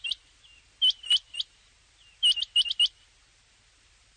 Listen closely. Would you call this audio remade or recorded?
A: recorded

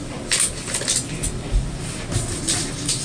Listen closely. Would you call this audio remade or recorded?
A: recorded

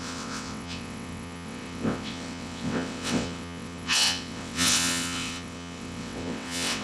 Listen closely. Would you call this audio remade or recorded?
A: remade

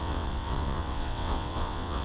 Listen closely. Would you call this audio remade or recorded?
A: remade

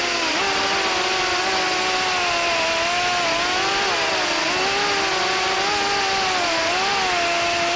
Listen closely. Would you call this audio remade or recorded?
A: recorded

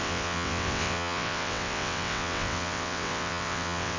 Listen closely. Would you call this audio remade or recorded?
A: remade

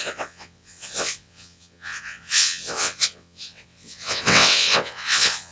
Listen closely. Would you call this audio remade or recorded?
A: remade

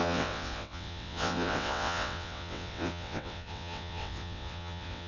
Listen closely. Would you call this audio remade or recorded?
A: remade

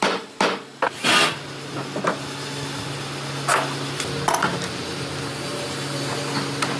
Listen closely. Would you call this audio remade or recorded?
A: recorded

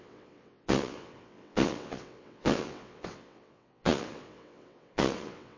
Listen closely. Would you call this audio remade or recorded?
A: remade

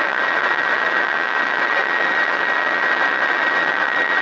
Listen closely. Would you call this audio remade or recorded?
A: remade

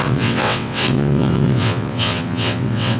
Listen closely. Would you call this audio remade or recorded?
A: remade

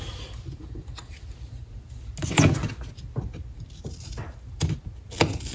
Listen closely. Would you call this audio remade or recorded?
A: recorded